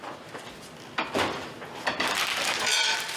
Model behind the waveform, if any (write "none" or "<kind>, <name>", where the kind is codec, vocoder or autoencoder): none